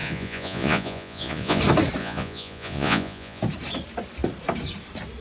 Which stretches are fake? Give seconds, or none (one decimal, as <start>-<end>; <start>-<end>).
0.0-1.6; 2.0-3.4